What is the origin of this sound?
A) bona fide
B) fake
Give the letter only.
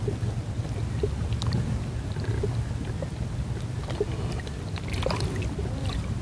A